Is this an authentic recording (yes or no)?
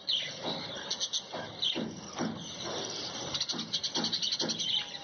yes